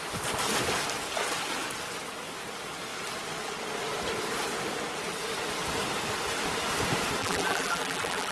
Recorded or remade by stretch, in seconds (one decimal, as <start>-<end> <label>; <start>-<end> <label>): 0.0-7.2 recorded; 7.2-8.3 remade